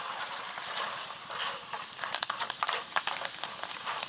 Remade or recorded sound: recorded